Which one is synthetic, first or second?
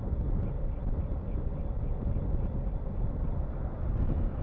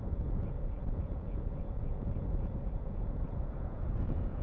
second